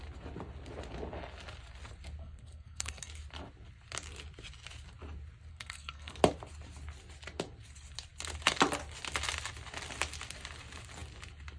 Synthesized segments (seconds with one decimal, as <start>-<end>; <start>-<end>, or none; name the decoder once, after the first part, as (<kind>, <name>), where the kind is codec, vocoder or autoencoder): 2.2-3.1 (codec, SNAC); 5.5-6.1